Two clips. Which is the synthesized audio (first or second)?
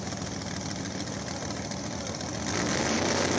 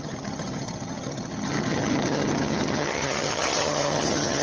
second